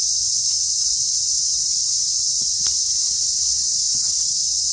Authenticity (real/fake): fake